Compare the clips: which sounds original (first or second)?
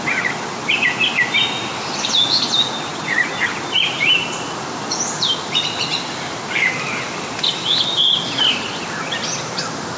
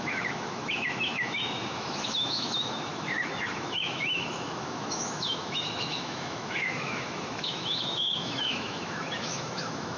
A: first